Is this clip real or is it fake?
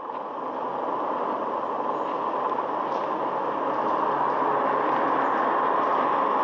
real